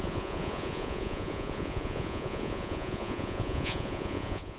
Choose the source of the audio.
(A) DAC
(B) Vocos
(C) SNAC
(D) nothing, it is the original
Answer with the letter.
B